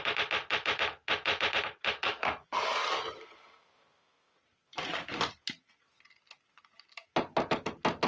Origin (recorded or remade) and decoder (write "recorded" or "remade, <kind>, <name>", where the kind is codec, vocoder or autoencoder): recorded